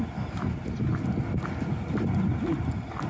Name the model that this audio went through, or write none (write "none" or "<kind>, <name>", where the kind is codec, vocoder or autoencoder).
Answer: none